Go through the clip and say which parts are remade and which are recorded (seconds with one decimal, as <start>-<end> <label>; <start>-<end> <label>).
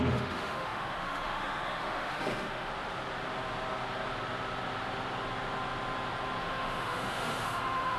0.0-2.7 remade; 2.7-6.4 recorded; 6.4-8.0 remade